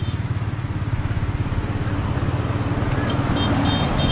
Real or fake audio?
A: real